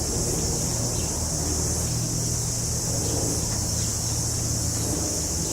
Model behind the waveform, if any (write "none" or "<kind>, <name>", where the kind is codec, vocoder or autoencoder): vocoder, BigVGAN v2